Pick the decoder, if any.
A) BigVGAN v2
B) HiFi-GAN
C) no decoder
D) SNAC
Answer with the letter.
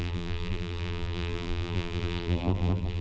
A